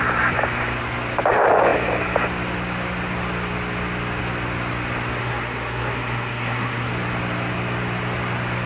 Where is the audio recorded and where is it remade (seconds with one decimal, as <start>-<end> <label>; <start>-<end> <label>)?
0.0-5.2 recorded; 5.2-6.9 remade; 6.9-8.7 recorded